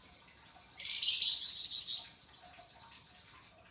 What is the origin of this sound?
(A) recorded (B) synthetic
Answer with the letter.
A